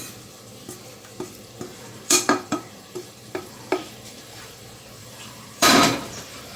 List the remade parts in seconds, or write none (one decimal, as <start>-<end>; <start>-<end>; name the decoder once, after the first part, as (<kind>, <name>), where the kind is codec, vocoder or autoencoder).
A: 1.7-4.6 (vocoder, BigVGAN v2); 5.0-6.6